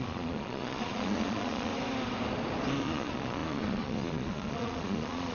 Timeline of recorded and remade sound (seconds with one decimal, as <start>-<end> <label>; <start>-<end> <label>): 0.0-1.7 remade; 1.7-2.8 recorded; 2.8-5.3 remade